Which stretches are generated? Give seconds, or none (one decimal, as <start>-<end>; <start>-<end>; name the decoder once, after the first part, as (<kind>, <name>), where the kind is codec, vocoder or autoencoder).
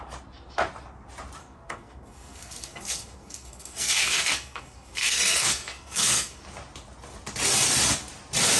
1.4-6.4 (codec, SNAC)